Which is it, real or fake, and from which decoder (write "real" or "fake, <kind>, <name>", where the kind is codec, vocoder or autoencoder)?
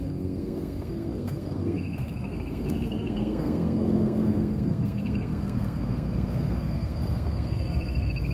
fake, codec, SNAC